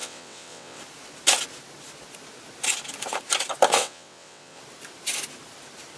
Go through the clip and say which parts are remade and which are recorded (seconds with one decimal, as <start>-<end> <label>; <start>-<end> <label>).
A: 0.0-0.8 remade; 0.8-3.8 recorded; 3.8-4.6 remade; 4.6-6.0 recorded